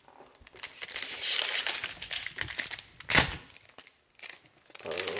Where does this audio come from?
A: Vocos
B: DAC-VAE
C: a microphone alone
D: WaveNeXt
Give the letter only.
C